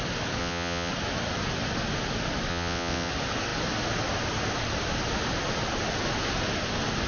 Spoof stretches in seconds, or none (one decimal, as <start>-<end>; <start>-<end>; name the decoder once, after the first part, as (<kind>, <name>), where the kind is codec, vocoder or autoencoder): 0.4-0.9 (vocoder, WaveNeXt); 2.5-3.1